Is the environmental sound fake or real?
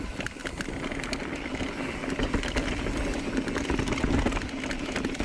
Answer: real